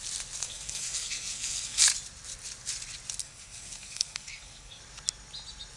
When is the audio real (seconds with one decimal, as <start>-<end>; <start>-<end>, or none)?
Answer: 0.0-0.4; 1.9-3.2; 4.8-5.8

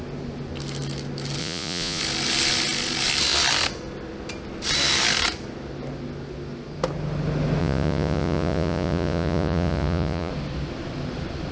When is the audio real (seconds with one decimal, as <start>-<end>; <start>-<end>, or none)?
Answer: 0.0-1.4; 2.0-7.6; 10.3-11.5

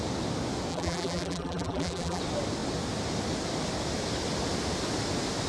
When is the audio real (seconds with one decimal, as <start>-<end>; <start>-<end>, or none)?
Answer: 0.0-0.7; 2.2-5.5

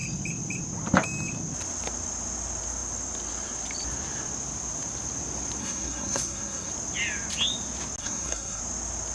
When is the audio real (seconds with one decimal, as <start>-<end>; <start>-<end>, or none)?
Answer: 0.0-5.6; 6.7-8.0; 8.6-9.1